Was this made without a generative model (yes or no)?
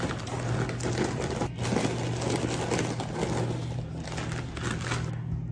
yes